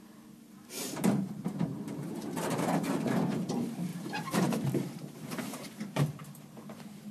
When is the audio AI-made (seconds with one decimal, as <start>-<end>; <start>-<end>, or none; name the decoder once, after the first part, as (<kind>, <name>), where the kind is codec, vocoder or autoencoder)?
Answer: 0.0-7.1 (vocoder, BigVGAN v2)